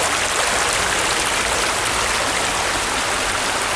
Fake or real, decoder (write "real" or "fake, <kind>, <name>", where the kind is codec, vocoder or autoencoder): real